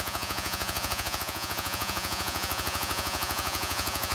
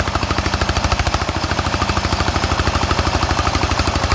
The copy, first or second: first